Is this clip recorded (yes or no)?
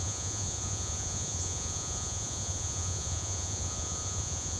no